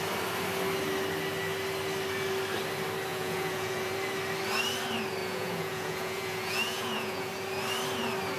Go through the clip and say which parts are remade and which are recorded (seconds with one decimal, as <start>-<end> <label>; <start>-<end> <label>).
0.0-3.1 recorded; 3.1-3.9 remade; 3.9-5.2 recorded; 5.2-7.3 remade; 7.3-8.4 recorded